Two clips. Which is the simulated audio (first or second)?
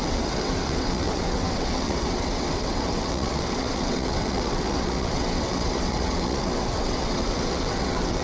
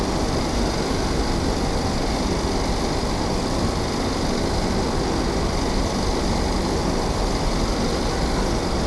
first